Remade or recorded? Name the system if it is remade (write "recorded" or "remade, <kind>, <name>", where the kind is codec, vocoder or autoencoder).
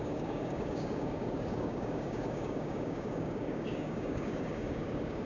remade, codec, DAC